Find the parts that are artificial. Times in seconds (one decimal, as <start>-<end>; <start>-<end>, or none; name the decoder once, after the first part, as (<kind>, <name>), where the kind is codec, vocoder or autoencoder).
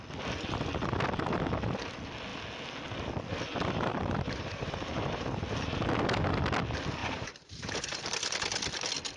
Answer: 3.9-5.3 (vocoder, BigVGAN v2); 7.0-8.0